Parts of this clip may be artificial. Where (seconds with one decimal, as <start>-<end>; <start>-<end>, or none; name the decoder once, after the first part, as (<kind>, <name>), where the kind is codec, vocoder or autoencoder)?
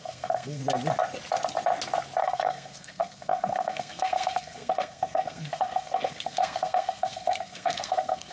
0.0-0.6 (codec, SNAC); 2.2-8.3